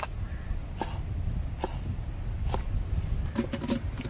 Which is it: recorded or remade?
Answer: recorded